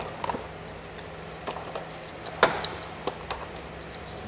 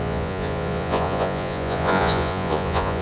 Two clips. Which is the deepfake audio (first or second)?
second